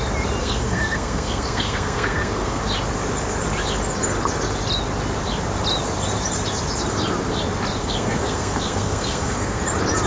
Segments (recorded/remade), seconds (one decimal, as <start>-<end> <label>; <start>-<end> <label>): 0.0-0.4 recorded; 0.4-2.6 remade; 2.6-7.8 recorded; 7.8-9.6 remade; 9.6-10.1 recorded